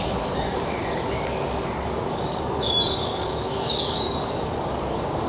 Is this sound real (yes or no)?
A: no